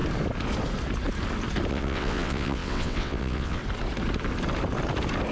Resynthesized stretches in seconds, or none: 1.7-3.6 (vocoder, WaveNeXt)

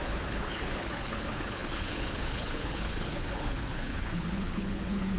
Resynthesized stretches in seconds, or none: 0.0-5.2 (codec, HILCodec)

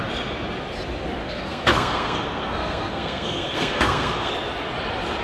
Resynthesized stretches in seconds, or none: 1.2-4.3 (codec, SNAC)

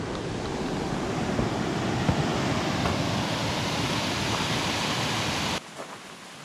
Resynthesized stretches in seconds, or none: none